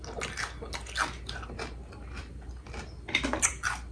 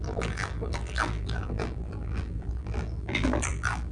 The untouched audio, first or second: first